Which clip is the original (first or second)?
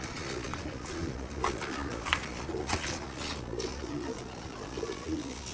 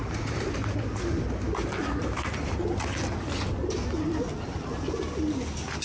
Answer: second